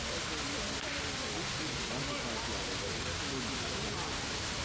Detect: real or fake real